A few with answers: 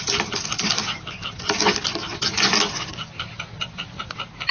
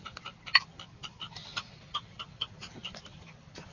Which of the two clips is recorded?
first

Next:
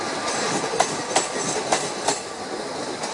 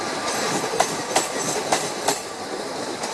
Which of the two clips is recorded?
first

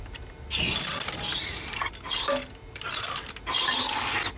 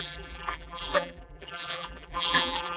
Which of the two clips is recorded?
first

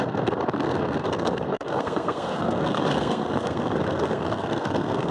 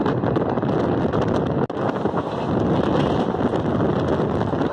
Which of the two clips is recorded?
second